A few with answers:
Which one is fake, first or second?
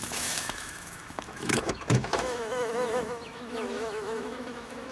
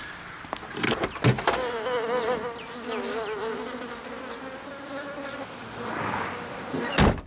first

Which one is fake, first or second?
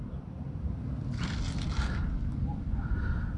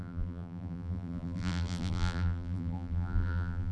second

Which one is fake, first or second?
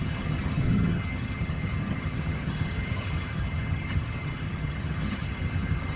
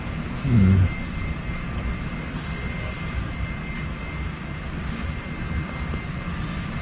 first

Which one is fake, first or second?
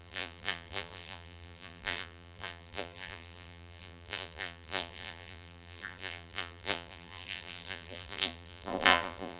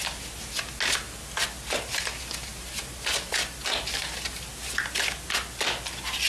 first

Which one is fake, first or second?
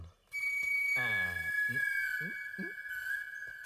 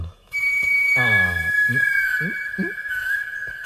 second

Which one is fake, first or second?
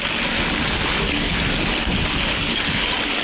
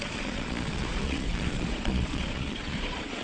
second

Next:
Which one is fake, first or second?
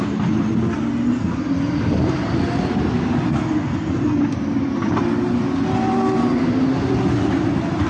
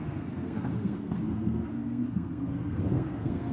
second